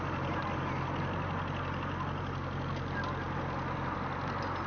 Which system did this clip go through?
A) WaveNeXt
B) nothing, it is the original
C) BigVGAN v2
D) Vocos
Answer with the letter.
B